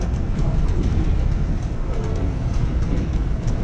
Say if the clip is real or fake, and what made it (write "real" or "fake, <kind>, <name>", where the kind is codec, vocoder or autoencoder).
fake, codec, SNAC